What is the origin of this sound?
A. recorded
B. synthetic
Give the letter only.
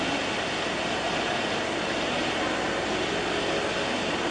A